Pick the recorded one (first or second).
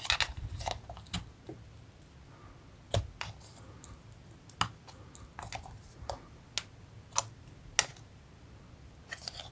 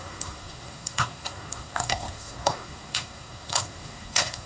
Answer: first